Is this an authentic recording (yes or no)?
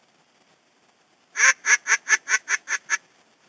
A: yes